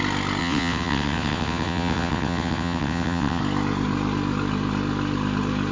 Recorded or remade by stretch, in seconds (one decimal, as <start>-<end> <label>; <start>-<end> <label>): 0.0-0.4 recorded; 0.4-3.4 remade; 3.4-5.7 recorded